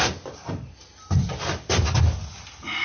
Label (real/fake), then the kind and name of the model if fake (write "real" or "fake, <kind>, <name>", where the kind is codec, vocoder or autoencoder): real